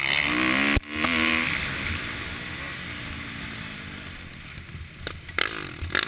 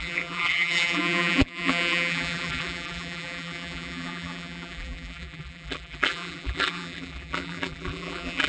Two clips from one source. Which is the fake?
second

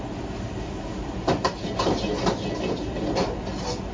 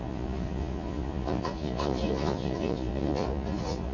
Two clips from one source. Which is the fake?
second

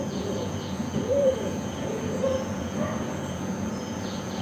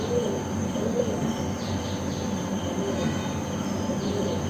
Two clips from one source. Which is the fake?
first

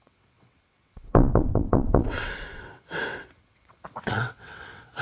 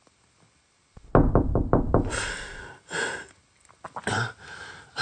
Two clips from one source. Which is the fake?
first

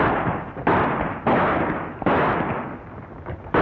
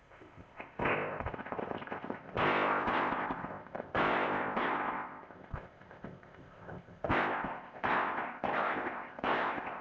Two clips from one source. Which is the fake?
second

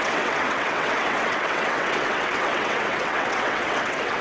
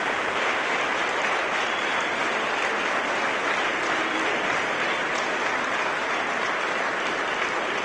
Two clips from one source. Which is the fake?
first